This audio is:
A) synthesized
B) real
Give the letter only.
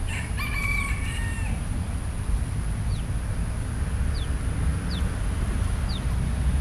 B